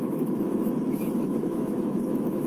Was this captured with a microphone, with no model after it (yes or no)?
no